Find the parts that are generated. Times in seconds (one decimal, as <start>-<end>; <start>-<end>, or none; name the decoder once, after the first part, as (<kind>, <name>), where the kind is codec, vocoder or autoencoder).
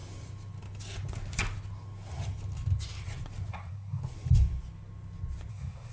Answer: 3.5-4.0 (codec, SNAC); 5.5-5.9